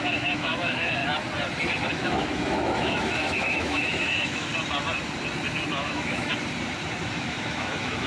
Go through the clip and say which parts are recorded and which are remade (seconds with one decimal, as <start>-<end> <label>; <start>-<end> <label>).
0.0-1.0 remade; 1.0-1.9 recorded; 1.9-4.5 remade; 4.5-5.7 recorded; 5.7-6.3 remade; 6.3-7.2 recorded; 7.2-8.1 remade